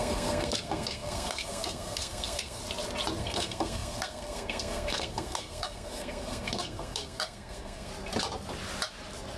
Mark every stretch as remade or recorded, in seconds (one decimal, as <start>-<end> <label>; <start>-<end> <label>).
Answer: 0.0-2.6 remade; 2.6-3.2 recorded; 3.2-7.9 remade; 7.9-9.4 recorded